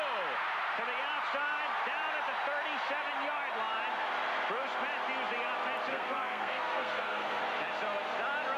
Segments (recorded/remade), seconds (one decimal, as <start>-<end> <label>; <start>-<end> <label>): 0.0-5.9 recorded; 5.9-7.4 remade; 7.4-8.6 recorded